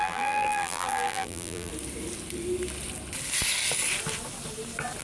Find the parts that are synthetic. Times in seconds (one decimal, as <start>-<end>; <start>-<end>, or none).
0.0-1.7